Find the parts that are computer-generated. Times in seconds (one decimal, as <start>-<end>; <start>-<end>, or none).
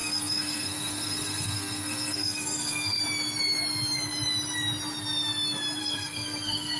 0.0-3.0; 5.8-6.8